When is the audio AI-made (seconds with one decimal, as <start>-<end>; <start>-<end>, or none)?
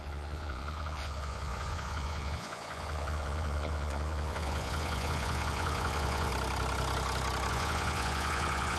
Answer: 0.0-6.3; 7.5-8.8